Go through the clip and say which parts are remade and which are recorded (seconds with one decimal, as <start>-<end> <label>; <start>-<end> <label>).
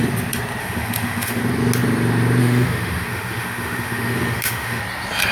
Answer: 0.0-0.6 recorded; 0.6-1.4 remade; 1.4-2.4 recorded; 2.4-4.8 remade; 4.8-5.3 recorded